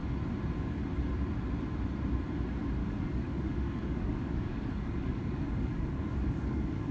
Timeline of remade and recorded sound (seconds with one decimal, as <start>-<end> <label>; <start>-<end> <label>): 0.0-2.8 recorded; 2.8-6.9 remade